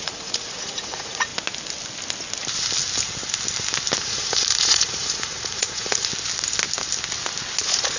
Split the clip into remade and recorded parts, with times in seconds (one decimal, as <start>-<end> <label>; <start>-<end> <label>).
0.0-1.3 remade; 1.3-4.0 recorded; 4.0-6.1 remade; 6.1-7.6 recorded; 7.6-8.0 remade